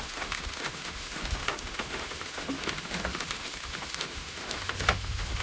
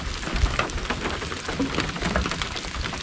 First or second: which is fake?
first